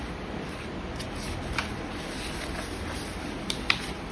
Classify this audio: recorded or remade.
remade